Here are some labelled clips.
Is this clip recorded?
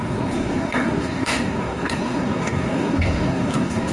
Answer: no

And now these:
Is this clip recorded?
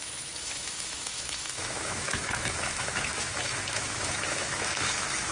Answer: no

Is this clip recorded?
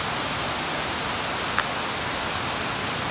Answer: yes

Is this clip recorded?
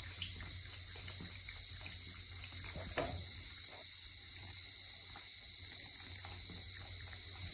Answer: yes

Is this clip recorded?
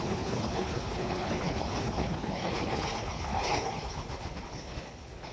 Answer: no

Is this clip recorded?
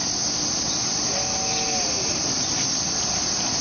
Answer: yes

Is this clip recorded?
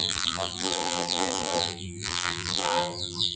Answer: no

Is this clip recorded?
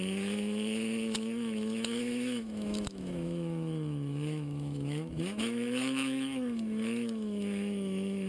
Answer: no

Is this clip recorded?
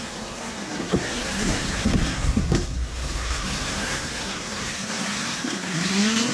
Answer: no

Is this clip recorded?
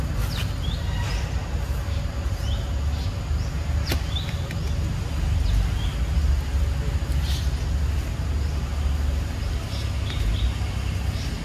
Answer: yes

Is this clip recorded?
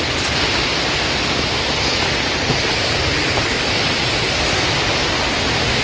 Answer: yes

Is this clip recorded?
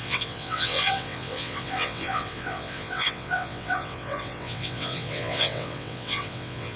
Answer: no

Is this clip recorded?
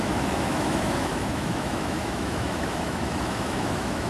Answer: no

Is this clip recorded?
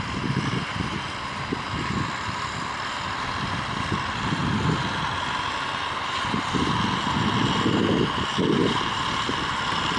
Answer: yes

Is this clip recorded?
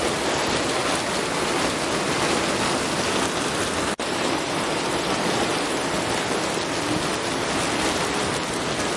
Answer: yes